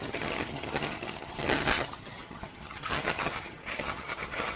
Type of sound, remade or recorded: remade